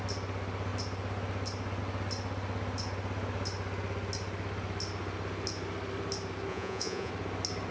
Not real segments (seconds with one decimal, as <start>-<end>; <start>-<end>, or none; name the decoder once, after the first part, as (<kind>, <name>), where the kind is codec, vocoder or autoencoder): 6.5-7.1 (vocoder, Vocos)

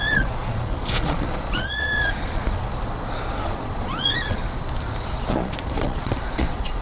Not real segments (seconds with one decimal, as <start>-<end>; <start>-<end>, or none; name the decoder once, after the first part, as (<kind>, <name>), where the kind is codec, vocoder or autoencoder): 0.0-2.7 (vocoder, Vocos); 3.3-4.4; 5.0-6.8

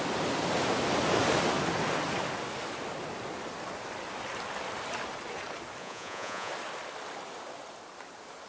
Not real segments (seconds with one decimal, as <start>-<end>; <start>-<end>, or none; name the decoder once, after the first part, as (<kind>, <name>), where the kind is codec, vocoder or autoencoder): 5.8-6.5 (vocoder, Vocos)

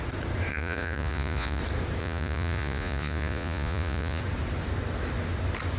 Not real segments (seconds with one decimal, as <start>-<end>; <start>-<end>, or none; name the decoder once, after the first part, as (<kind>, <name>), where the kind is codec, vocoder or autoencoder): 0.5-1.6 (vocoder, Vocos); 2.0-4.2

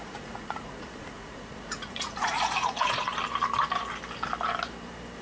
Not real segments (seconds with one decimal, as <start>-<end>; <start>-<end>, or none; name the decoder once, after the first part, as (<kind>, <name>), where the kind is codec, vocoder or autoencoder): 0.0-3.1 (vocoder, Vocos)

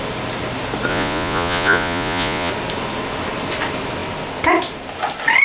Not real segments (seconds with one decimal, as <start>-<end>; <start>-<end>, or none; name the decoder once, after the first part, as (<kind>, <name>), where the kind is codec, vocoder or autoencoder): 0.9-2.5 (vocoder, Vocos)

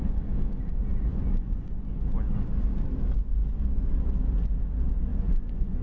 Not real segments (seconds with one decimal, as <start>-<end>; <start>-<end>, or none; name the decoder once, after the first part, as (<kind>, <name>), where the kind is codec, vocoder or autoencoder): 1.1-2.0 (vocoder, Vocos); 5.1-5.8